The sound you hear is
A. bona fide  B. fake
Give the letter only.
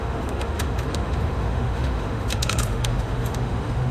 B